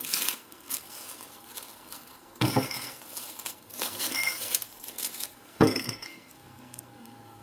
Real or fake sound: fake